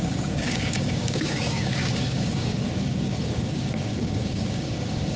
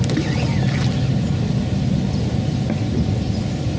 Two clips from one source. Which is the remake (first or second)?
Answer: first